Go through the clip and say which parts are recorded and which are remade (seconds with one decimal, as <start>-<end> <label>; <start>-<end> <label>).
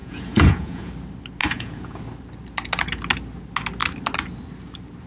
0.0-0.9 remade; 0.9-1.4 recorded; 1.4-2.0 remade; 2.0-5.1 recorded